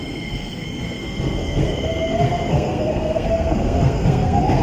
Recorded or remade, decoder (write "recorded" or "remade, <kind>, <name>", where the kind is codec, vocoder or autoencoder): remade, codec, SNAC